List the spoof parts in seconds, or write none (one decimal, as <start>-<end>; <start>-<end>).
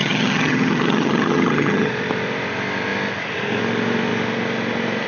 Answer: 0.0-1.9